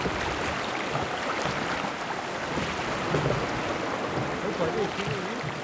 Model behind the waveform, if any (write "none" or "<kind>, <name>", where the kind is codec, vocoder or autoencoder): none